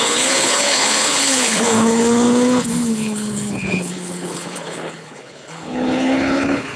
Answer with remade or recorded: remade